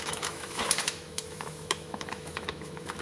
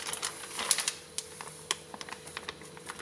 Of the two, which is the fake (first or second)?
first